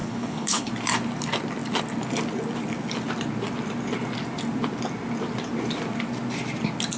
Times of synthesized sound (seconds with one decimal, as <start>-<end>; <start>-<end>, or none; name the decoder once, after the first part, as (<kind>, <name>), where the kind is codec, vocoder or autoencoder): 0.0-0.7 (codec, HILCodec)